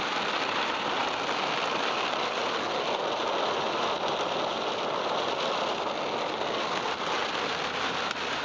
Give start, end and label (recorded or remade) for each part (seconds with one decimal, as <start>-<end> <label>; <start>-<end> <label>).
0.0-8.4 recorded